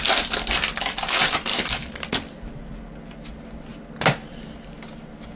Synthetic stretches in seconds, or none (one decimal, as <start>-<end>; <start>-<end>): none